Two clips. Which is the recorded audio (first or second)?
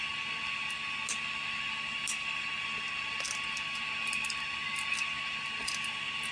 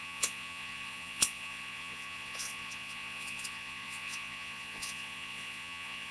first